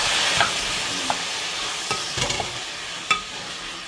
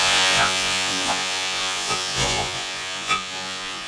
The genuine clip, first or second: first